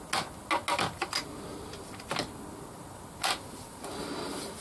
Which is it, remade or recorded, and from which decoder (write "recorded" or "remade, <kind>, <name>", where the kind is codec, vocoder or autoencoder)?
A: recorded